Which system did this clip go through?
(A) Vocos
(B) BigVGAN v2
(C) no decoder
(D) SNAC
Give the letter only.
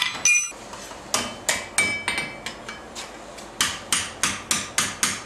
C